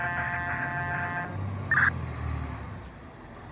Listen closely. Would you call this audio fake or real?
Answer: real